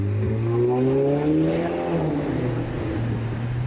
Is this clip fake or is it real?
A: real